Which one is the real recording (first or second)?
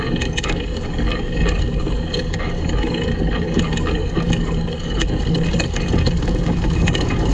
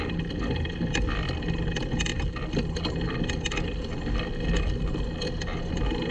second